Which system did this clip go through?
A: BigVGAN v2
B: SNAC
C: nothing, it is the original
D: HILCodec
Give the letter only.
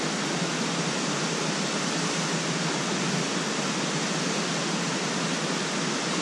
C